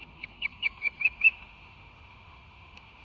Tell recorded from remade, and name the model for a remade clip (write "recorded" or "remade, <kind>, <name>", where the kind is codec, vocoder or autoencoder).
remade, autoencoder, DAC-VAE